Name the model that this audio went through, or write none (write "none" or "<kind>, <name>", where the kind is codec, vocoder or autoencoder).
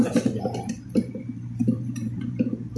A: vocoder, BigVGAN v2